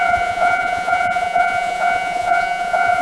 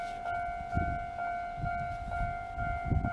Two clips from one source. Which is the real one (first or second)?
second